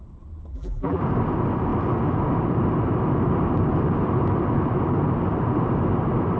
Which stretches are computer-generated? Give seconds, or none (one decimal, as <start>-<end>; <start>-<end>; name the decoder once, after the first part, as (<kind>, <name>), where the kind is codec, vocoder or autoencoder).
0.5-1.0 (vocoder, BigVGAN v2)